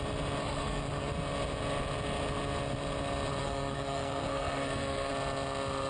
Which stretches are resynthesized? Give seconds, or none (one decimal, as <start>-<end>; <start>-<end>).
0.4-1.1; 3.4-5.1